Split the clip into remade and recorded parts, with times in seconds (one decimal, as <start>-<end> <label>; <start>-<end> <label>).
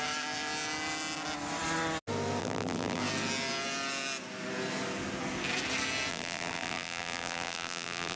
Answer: 0.0-2.4 recorded; 2.4-3.0 remade; 3.0-6.1 recorded; 6.1-8.2 remade